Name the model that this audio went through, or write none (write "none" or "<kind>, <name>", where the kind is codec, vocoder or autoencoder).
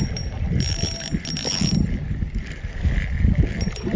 none